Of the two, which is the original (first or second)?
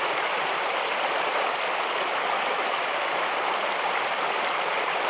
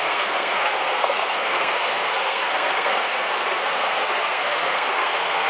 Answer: first